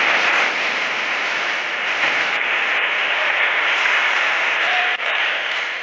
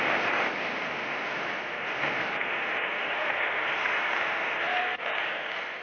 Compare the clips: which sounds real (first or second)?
second